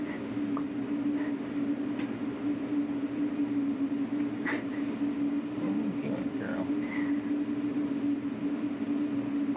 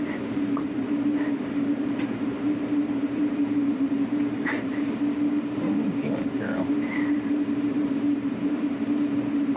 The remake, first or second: second